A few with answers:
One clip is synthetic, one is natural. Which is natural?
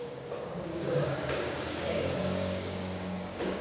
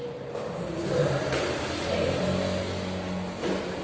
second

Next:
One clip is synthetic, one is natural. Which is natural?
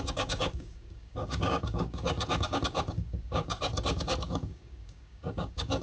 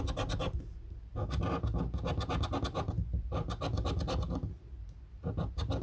second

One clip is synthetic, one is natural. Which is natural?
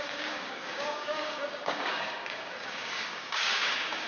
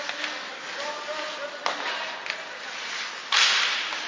second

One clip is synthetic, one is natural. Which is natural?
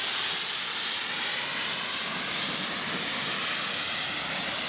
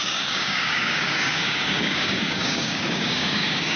first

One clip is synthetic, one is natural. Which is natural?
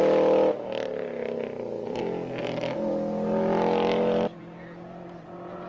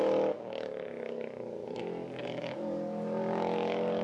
first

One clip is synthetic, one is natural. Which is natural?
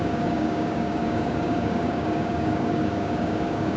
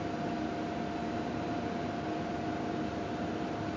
second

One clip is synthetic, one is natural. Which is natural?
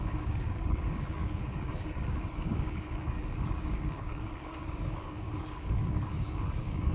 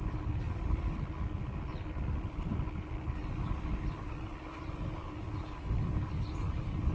second